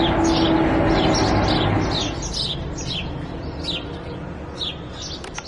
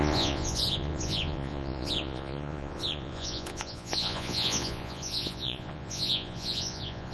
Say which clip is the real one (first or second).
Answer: first